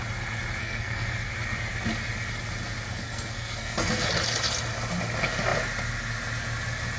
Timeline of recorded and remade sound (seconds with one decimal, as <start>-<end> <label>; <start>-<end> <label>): 0.0-0.6 recorded; 0.6-1.3 remade; 1.3-2.9 recorded; 2.9-4.1 remade; 4.1-7.0 recorded